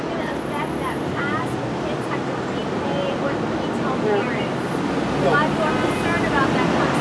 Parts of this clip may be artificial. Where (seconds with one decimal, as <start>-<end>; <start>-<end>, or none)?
none